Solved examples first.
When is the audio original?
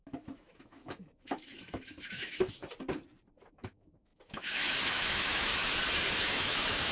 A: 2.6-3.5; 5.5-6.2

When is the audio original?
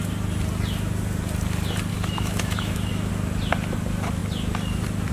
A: 0.0-1.9; 3.1-5.1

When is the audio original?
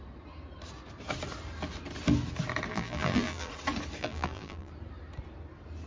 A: 0.0-2.7; 3.5-4.0; 4.7-5.9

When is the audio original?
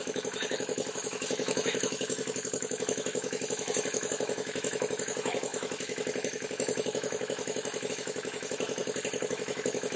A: 8.8-9.3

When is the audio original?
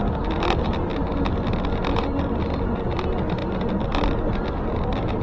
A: 0.0-5.2